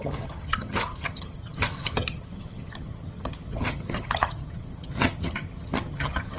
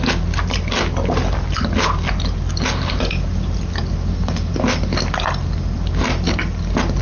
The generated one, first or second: first